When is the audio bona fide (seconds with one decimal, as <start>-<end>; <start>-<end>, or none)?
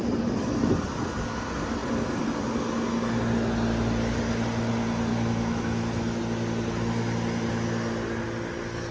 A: 0.0-5.1; 6.2-8.9